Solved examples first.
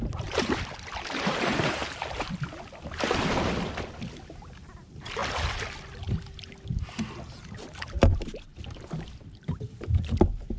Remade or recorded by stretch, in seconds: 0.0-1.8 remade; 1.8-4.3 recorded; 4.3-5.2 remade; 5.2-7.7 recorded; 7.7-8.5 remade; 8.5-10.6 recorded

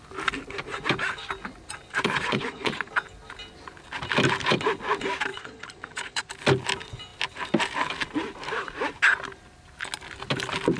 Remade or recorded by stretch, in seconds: 0.0-1.9 recorded; 1.9-2.9 remade; 2.9-5.3 recorded; 5.3-6.3 remade; 6.3-10.8 recorded

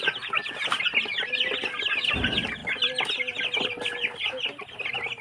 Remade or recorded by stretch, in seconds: 0.0-5.2 recorded

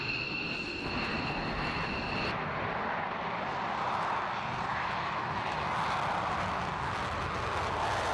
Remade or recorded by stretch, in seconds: 0.0-4.7 recorded; 4.7-5.7 remade; 5.7-8.1 recorded

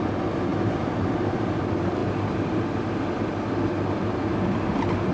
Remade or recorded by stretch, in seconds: 0.0-0.5 recorded; 0.5-1.6 remade; 1.6-2.0 recorded; 2.0-2.9 remade; 2.9-5.1 recorded

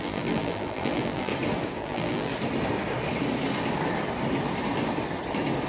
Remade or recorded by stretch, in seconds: 0.0-1.3 remade; 1.3-1.8 recorded; 1.8-2.3 remade; 2.3-5.7 recorded

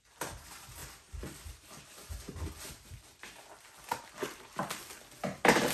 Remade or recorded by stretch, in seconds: 0.0-5.7 recorded

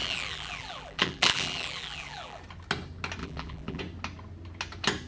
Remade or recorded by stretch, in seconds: 0.0-2.4 remade; 2.4-3.2 recorded; 3.2-3.8 remade; 3.8-5.1 recorded